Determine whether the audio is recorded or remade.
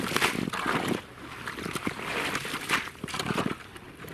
recorded